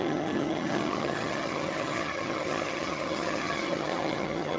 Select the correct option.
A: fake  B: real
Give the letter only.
A